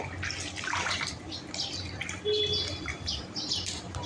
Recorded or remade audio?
recorded